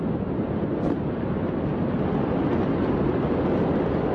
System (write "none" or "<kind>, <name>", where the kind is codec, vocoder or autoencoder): none